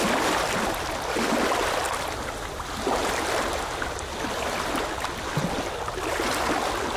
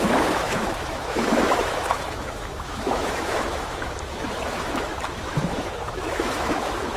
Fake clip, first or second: second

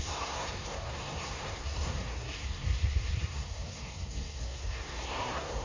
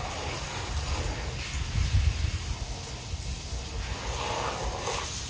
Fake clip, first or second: first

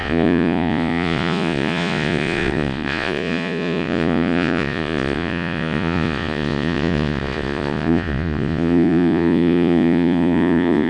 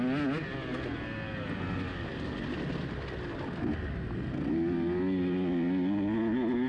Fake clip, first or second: first